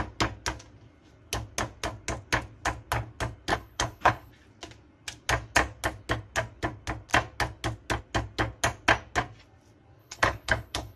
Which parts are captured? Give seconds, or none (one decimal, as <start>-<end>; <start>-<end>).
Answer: 0.0-3.5; 4.3-10.0